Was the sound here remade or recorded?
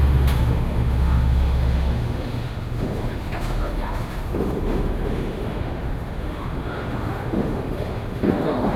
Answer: remade